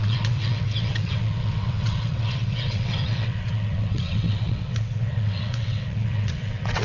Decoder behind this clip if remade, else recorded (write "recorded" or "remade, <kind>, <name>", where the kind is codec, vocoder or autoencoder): remade, vocoder, WaveNeXt